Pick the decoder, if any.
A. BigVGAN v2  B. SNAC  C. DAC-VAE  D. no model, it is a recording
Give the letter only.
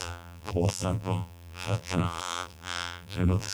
A